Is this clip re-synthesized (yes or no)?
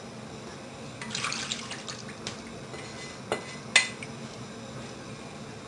no